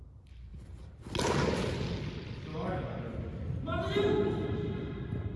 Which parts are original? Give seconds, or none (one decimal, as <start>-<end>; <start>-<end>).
0.0-2.5; 3.0-5.4

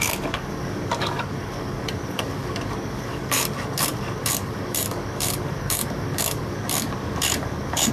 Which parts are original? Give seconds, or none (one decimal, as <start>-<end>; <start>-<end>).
none

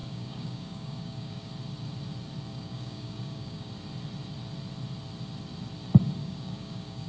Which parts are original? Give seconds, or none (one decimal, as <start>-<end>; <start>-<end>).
1.5-2.5; 3.7-6.2

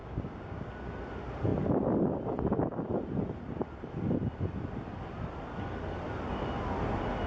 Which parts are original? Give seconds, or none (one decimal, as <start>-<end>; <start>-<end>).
0.7-7.3